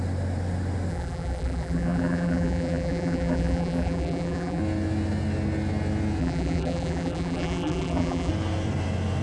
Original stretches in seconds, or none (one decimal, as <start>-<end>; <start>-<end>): 0.0-0.9; 4.6-6.2; 8.3-9.2